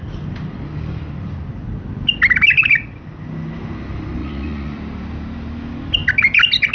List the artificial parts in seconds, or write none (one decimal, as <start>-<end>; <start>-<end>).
4.2-4.8